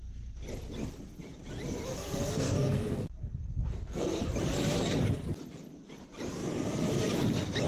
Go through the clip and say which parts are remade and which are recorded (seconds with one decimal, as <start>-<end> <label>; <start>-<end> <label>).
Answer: 0.0-1.9 recorded; 1.9-4.2 remade; 4.2-7.7 recorded